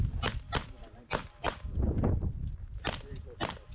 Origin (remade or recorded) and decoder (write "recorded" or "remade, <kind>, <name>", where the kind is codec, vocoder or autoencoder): remade, vocoder, BigVGAN v2